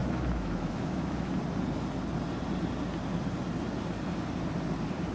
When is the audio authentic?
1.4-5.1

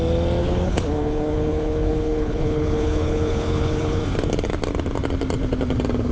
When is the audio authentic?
0.0-0.4; 4.0-6.1

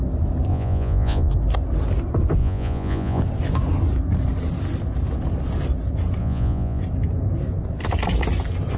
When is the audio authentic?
0.0-0.5; 1.3-2.4; 3.2-6.2; 6.8-8.8

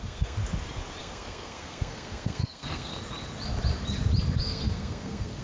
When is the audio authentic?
0.4-1.0; 2.9-4.4

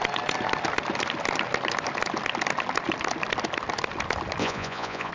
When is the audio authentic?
0.0-4.4

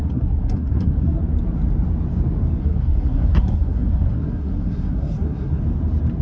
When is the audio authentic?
1.2-2.6; 5.6-6.2

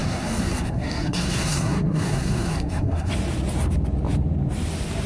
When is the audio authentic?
3.1-5.1

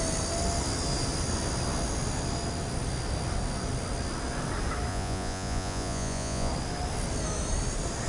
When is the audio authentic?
0.0-4.9; 6.5-8.1